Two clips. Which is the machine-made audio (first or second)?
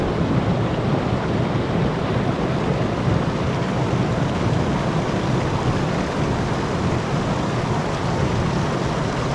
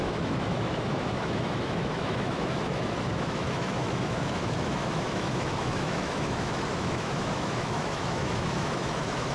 second